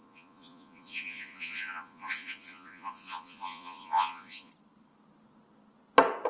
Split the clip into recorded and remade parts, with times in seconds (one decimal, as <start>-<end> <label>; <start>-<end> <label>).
0.0-4.5 remade; 4.5-6.3 recorded